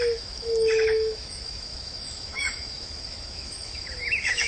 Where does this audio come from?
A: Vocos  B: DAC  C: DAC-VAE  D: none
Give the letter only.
C